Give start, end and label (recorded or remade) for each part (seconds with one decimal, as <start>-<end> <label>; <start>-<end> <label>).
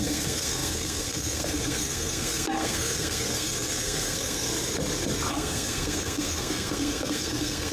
0.0-4.5 remade; 4.5-5.3 recorded; 5.3-7.7 remade